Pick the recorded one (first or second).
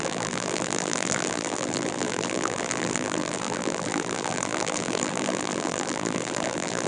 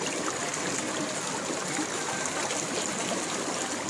second